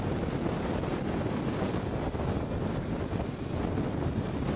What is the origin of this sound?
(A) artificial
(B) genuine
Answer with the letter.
B